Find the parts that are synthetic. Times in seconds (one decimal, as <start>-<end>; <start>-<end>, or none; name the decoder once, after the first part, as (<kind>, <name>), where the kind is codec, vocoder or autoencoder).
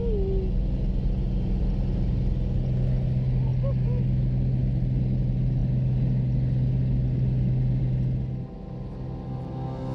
none